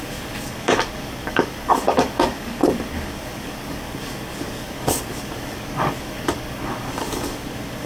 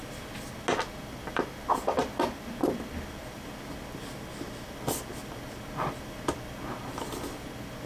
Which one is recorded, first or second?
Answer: second